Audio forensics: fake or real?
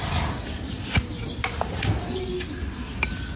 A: real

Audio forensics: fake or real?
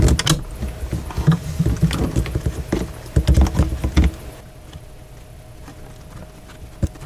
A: real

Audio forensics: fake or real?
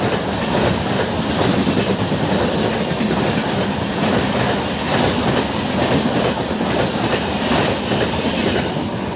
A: real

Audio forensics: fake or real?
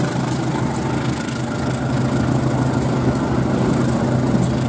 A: real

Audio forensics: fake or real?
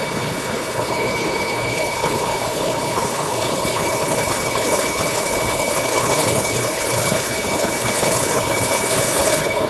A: fake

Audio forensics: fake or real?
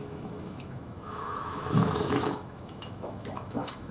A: fake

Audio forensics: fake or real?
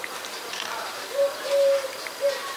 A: fake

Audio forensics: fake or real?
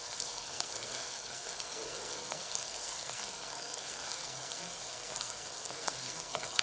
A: fake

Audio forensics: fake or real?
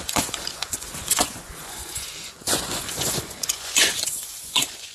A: fake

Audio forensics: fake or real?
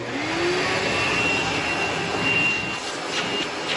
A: real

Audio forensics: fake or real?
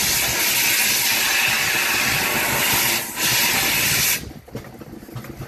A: real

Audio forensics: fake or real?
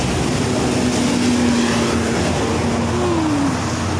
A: real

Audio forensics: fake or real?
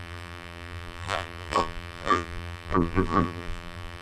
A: fake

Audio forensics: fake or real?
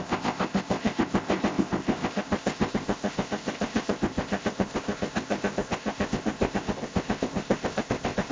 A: fake